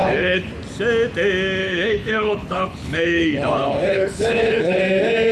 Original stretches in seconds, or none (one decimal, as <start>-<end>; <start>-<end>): 0.5-1.6; 4.8-5.3